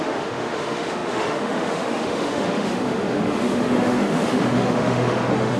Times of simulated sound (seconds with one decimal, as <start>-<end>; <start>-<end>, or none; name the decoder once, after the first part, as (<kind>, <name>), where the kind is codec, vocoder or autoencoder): 0.0-5.6 (autoencoder, DAC-VAE)